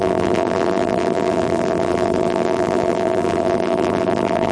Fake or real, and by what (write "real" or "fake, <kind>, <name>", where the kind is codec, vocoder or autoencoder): fake, vocoder, BigVGAN v2